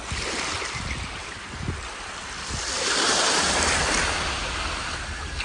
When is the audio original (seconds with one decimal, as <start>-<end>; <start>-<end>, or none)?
0.0-1.2; 4.4-5.4